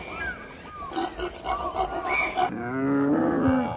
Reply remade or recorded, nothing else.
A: recorded